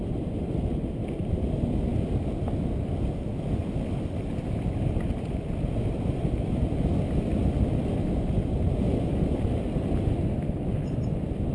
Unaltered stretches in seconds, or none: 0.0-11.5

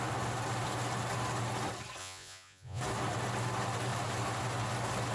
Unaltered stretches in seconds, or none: 0.0-2.0; 2.8-5.1

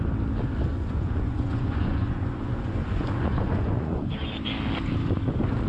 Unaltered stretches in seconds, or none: 0.0-0.7; 4.1-5.7

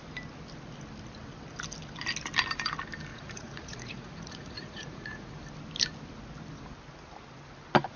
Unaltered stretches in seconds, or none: 0.0-3.1; 5.4-8.0

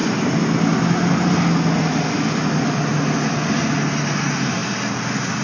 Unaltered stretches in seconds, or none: 0.0-5.4

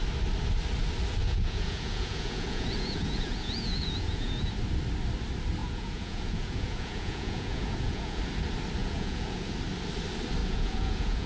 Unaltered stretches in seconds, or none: 0.0-1.2; 4.5-5.6; 8.2-8.8; 9.5-10.4

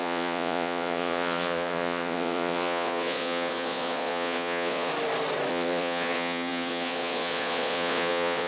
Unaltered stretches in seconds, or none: 4.9-5.5

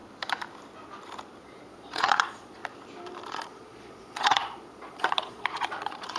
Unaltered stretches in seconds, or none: 0.0-1.4; 2.6-3.3